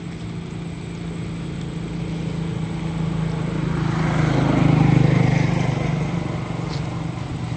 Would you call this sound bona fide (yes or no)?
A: yes